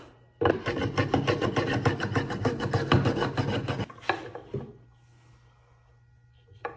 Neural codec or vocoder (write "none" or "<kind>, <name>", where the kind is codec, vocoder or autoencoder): none